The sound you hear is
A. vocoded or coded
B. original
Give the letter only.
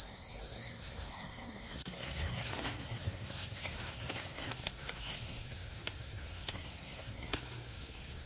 A